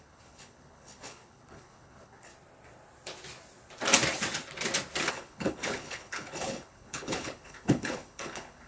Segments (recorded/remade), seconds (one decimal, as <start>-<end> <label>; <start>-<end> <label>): 0.0-2.3 remade; 2.3-5.1 recorded; 5.1-8.7 remade